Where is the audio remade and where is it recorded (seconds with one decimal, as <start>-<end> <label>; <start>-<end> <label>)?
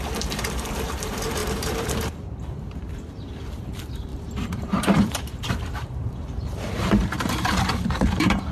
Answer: 0.0-8.5 remade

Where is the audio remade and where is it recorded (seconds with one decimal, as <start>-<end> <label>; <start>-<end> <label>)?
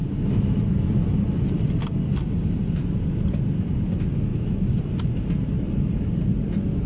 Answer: 0.0-4.3 recorded; 4.3-5.5 remade; 5.5-6.9 recorded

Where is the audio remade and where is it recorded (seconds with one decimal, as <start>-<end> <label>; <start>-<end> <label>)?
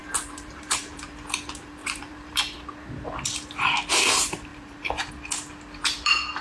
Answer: 0.0-1.0 remade; 1.0-1.8 recorded; 1.8-2.4 remade; 2.4-4.5 recorded; 4.5-5.1 remade; 5.1-6.4 recorded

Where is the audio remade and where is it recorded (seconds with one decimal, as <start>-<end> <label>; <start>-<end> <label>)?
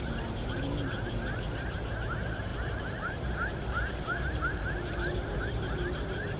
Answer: 0.0-6.4 recorded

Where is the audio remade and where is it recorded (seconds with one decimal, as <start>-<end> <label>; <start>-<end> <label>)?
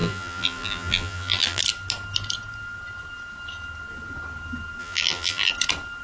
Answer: 0.0-1.6 remade; 1.6-4.8 recorded; 4.8-5.5 remade; 5.5-6.0 recorded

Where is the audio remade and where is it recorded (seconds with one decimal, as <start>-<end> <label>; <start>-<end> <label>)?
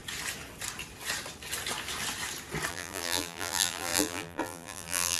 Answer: 0.0-2.7 recorded; 2.7-5.2 remade